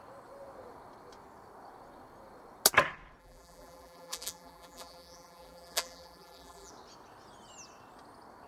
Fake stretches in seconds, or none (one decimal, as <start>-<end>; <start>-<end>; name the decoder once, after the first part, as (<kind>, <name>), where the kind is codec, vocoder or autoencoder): 3.2-6.7 (vocoder, BigVGAN v2)